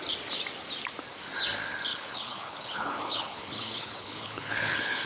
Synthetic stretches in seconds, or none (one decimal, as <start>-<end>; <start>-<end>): 1.9-5.1